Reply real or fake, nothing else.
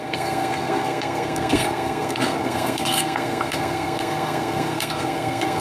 fake